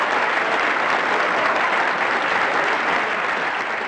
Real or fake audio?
real